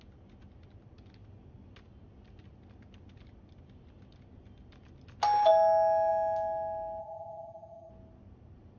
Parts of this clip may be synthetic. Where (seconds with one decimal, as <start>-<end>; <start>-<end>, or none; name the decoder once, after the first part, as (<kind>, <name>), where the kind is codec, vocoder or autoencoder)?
7.0-7.9 (vocoder, HiFi-GAN)